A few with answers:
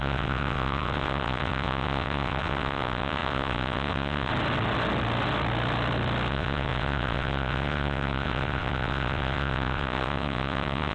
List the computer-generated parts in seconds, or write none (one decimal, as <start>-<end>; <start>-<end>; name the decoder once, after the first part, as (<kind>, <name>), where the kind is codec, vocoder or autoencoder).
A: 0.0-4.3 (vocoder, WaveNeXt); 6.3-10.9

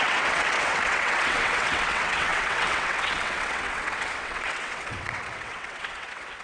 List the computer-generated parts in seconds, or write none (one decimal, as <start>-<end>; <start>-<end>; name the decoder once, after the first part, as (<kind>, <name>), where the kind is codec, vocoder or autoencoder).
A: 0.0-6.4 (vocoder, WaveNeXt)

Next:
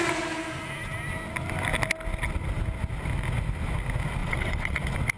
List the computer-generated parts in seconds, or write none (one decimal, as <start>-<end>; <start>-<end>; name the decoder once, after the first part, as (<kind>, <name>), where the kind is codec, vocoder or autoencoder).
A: 4.2-4.8 (vocoder, WaveNeXt)

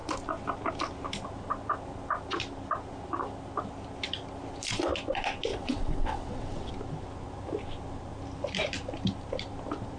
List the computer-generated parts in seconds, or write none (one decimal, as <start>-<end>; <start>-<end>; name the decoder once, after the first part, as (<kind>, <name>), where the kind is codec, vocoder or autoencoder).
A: 5.5-6.7 (vocoder, WaveNeXt)

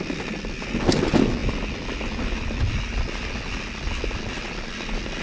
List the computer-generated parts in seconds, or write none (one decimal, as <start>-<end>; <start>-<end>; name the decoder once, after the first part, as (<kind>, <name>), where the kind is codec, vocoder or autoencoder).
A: none

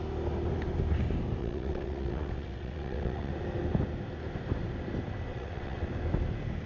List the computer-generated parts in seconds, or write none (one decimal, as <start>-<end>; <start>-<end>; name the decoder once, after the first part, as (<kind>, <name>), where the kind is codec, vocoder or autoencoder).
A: 1.4-3.3 (vocoder, WaveNeXt); 5.3-5.9

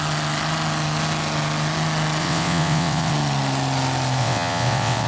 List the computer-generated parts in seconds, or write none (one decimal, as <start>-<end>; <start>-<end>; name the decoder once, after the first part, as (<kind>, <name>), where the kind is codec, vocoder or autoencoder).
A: 2.2-3.1 (vocoder, WaveNeXt); 4.2-5.1

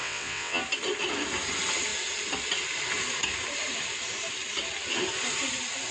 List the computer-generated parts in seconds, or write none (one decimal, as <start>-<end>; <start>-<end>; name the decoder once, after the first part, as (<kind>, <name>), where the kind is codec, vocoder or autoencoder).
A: 0.0-0.6 (vocoder, WaveNeXt)